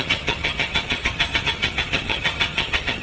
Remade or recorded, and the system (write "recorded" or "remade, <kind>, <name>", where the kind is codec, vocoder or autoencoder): remade, vocoder, HiFi-GAN